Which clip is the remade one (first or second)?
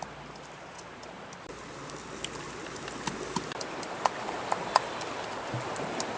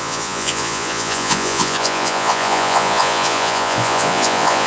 second